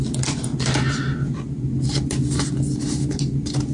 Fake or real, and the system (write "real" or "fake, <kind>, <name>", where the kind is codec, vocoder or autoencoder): real